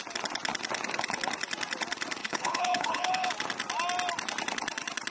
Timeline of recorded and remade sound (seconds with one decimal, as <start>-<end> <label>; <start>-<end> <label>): 0.0-2.2 recorded; 2.2-3.3 remade; 3.3-5.1 recorded